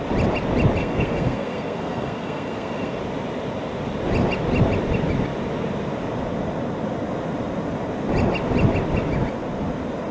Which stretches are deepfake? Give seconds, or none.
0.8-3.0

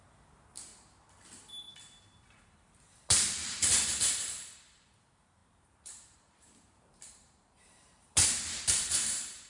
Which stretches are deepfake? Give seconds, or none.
0.0-0.7; 2.0-9.5

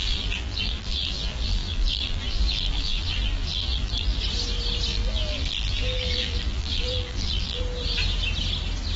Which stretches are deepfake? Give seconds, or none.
0.0-4.2; 4.9-7.6